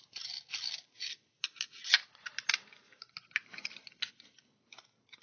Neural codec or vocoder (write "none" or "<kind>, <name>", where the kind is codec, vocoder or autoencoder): none